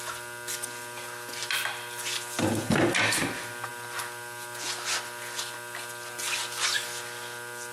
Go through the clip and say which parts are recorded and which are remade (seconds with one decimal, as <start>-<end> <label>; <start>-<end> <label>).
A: 0.0-7.7 recorded